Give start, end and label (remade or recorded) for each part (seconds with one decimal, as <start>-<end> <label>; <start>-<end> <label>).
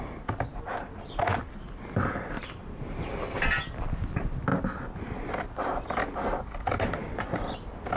0.0-8.0 recorded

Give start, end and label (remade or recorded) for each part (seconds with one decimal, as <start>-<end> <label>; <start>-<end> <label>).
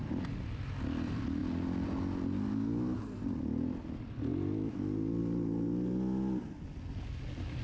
0.0-7.6 recorded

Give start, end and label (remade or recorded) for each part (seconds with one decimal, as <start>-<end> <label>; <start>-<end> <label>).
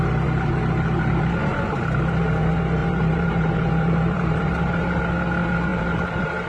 0.0-2.8 recorded; 2.8-5.0 remade; 5.0-5.7 recorded; 5.7-6.5 remade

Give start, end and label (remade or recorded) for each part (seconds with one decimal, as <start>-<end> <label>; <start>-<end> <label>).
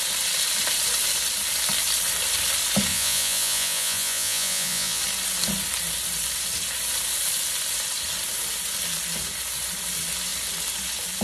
0.0-2.9 recorded; 2.9-5.0 remade; 5.0-11.2 recorded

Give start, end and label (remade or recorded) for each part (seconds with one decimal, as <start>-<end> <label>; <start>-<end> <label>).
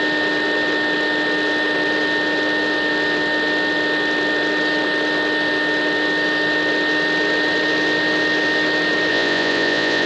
0.0-9.1 recorded; 9.1-10.1 remade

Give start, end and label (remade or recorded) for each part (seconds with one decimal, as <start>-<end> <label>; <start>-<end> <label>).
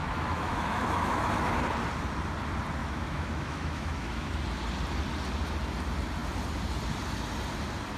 0.0-1.3 remade; 1.3-2.8 recorded; 2.8-4.4 remade; 4.4-8.0 recorded